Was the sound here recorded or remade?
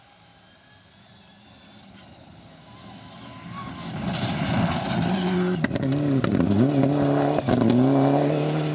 recorded